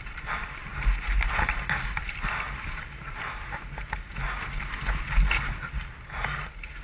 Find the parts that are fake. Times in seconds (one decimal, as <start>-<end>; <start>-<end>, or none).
none